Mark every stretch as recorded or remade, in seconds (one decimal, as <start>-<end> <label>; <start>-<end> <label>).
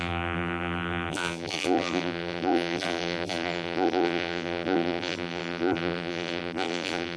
0.0-7.2 remade